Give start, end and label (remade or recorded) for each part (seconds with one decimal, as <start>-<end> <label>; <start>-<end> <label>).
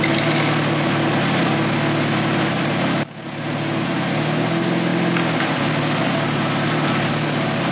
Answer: 0.0-7.7 recorded